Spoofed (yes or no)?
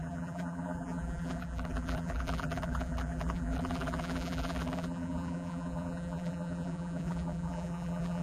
yes